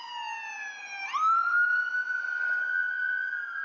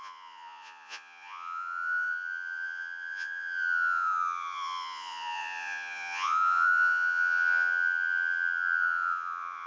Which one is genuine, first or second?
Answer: first